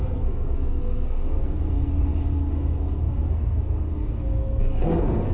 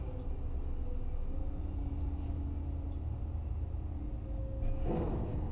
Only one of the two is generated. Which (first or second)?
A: first